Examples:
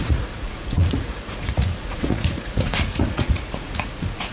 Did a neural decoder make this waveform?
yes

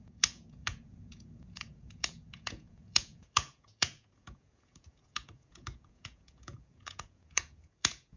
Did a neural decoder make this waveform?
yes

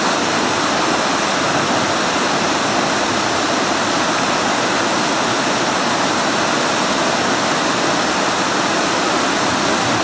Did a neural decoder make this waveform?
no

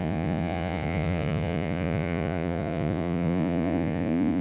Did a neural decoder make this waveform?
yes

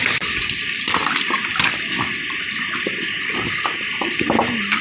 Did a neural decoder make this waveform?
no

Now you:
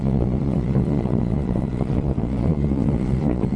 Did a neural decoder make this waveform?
yes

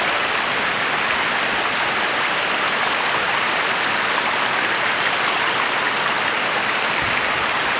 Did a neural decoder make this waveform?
no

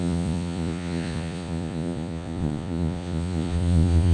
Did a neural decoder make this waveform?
yes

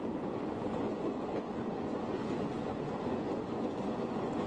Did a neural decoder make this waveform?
yes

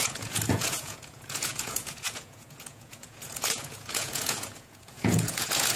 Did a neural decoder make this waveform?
yes